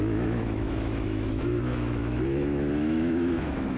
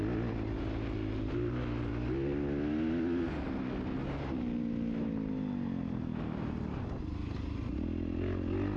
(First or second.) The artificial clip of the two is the first